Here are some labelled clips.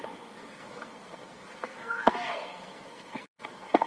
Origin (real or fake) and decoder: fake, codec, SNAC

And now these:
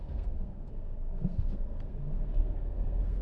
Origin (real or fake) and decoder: fake, codec, SNAC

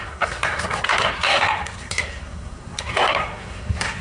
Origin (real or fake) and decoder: fake, codec, SNAC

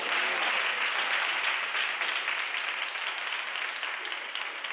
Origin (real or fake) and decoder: real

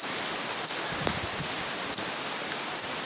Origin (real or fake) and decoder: real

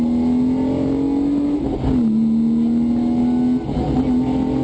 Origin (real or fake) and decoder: real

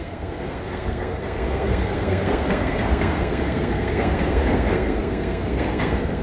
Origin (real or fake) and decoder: fake, codec, SNAC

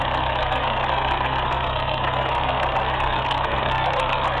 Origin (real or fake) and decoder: fake, codec, SNAC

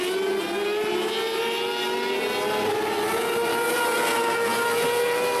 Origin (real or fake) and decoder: real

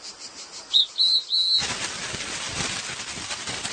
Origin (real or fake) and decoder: real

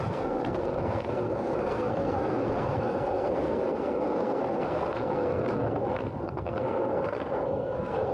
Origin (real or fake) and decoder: fake, codec, SNAC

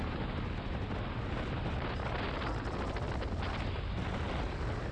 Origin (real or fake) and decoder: real